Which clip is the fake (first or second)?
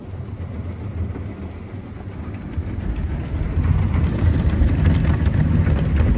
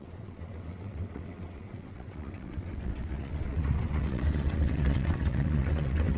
second